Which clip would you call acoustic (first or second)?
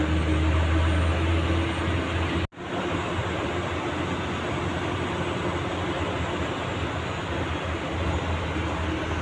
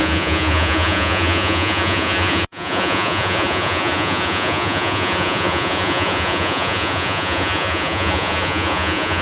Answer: first